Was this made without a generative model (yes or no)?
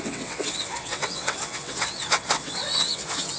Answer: no